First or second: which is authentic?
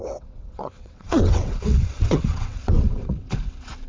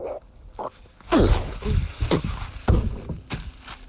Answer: second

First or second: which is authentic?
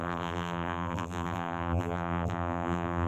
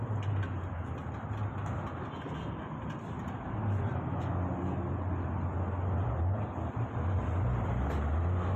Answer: second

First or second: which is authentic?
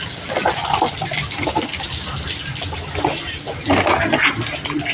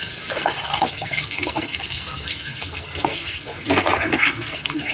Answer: first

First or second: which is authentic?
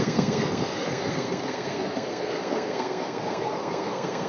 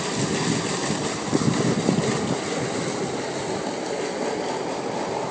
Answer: second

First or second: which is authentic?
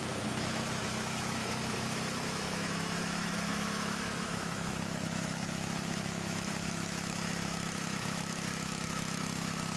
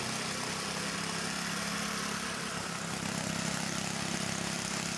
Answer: second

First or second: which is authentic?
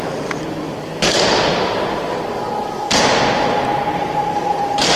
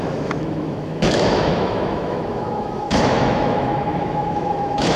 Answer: first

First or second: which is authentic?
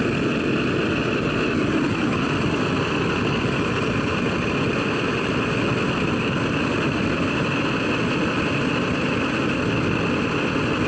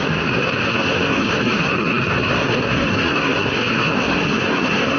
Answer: first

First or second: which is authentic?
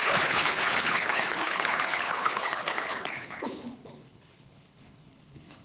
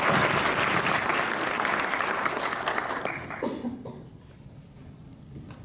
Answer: second